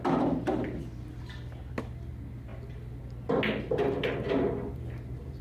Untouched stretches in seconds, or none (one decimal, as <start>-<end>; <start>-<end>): 0.0-5.4